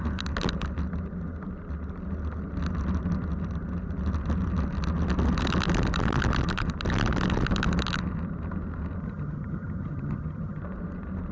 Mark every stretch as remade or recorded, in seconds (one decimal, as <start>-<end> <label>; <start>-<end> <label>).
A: 0.0-9.0 recorded; 9.0-10.6 remade; 10.6-11.3 recorded